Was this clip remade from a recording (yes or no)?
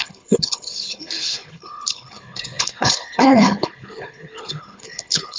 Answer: yes